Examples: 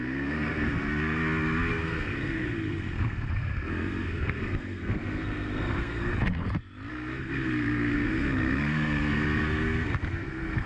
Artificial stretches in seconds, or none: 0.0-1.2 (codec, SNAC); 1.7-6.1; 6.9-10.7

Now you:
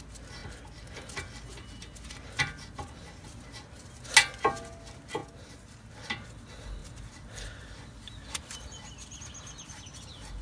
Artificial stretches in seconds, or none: none

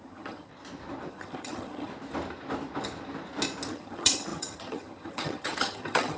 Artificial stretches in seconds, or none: 0.0-0.5 (vocoder, HiFi-GAN); 1.1-1.9; 3.7-6.2